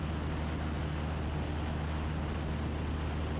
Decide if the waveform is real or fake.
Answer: real